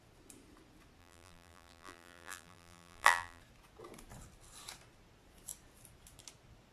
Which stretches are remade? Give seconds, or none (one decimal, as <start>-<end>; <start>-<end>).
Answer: 1.0-3.4